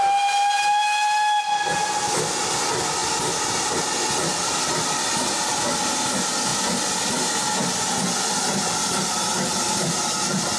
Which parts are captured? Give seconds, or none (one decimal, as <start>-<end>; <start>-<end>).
0.0-10.6